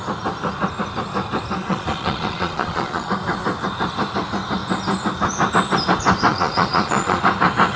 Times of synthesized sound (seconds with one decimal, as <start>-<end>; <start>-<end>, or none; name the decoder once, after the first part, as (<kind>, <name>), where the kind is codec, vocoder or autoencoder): 1.6-3.1 (vocoder, Vocos); 6.3-7.2